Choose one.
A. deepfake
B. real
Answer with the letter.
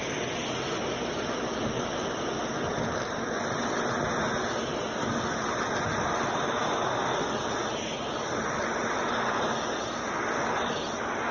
B